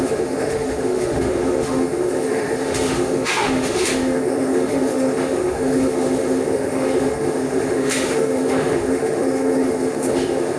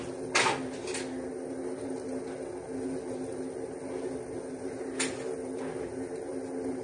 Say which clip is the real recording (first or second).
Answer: second